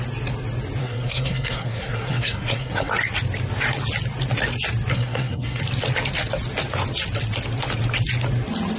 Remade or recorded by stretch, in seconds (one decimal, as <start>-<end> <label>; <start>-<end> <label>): 0.0-0.8 recorded; 0.8-2.9 remade; 2.9-4.9 recorded; 4.9-5.6 remade; 5.6-8.8 recorded